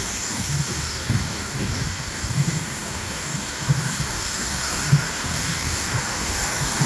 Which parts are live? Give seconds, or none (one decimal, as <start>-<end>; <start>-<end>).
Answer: none

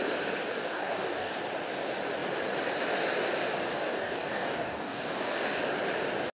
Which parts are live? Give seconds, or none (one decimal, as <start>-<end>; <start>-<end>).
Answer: 0.0-0.5; 1.3-3.7; 5.6-6.4

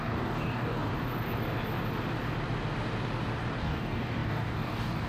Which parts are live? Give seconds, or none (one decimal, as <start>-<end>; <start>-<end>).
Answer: 0.9-3.6

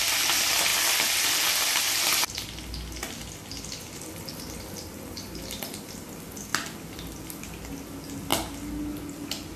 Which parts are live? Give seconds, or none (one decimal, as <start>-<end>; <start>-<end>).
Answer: 0.0-9.6

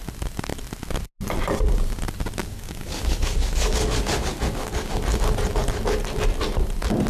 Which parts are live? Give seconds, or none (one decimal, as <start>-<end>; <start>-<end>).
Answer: 0.0-2.4; 5.0-7.1

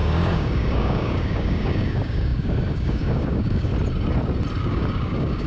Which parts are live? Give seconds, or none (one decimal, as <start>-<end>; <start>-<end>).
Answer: 3.7-4.6

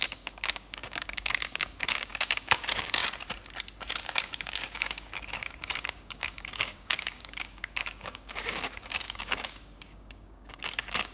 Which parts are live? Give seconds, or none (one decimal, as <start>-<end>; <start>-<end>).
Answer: 3.0-4.0